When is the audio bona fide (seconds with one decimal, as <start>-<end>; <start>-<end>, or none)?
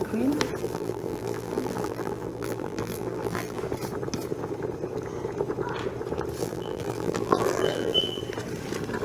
0.0-0.6; 3.6-6.4; 8.2-9.0